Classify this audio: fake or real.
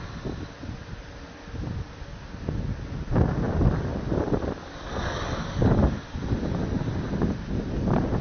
real